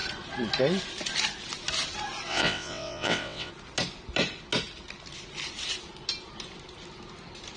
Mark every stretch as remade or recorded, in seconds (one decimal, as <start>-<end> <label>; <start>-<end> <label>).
0.0-2.3 recorded; 2.3-3.5 remade; 3.5-7.6 recorded